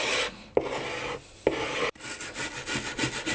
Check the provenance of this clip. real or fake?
real